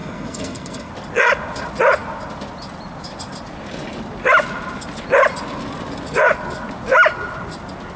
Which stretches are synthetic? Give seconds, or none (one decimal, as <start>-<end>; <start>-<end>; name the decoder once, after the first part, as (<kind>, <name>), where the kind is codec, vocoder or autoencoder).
0.0-0.9 (codec, SNAC)

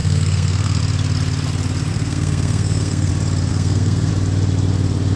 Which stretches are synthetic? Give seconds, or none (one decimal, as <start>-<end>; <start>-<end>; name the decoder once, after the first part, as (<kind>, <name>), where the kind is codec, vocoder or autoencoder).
0.0-0.8 (codec, SNAC); 1.9-3.1; 3.5-4.1

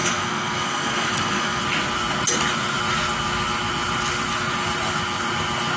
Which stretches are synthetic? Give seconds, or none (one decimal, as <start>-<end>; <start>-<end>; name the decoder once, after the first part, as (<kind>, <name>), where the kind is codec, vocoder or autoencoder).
0.0-1.6 (codec, SNAC)

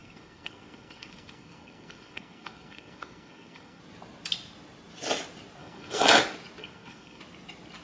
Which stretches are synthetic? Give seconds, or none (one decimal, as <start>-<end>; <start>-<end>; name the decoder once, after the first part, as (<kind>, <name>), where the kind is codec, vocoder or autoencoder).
0.0-3.8 (codec, SNAC); 5.6-6.1; 6.6-7.2

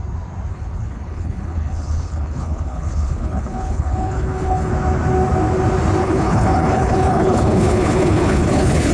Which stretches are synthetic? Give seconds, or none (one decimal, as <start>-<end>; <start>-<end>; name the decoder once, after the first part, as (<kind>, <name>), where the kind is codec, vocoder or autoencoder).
0.5-4.7 (codec, HILCodec); 6.0-8.9

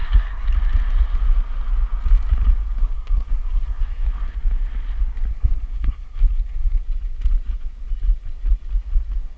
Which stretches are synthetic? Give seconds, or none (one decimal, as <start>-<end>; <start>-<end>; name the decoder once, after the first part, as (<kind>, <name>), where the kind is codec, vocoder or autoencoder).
0.0-0.5 (codec, SNAC); 2.8-4.1; 5.3-6.8